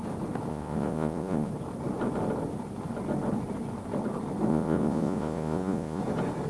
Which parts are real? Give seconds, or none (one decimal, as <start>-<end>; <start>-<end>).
0.0-0.5; 1.5-4.5; 6.0-6.5